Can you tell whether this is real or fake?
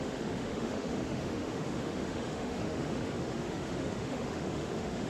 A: fake